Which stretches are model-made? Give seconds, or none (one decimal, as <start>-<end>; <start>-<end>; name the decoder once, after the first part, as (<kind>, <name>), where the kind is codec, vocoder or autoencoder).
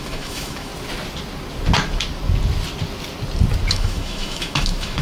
0.0-0.7 (autoencoder, DAC-VAE); 3.7-5.0